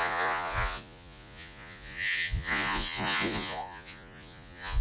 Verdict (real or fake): fake